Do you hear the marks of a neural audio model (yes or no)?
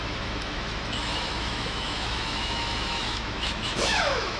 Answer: yes